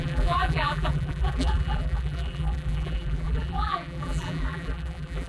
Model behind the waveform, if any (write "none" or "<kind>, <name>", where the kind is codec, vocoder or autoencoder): vocoder, BigVGAN v2